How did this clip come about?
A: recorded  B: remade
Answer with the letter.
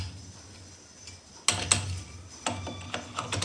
A